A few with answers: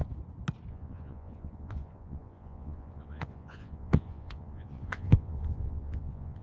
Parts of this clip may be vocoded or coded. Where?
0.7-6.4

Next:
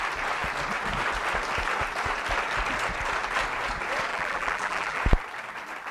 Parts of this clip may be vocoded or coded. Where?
4.1-5.0

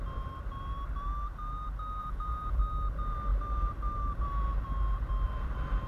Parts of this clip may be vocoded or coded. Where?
2.0-2.6

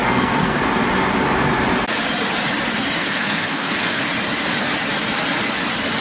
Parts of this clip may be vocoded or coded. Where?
0.0-0.6; 3.0-4.0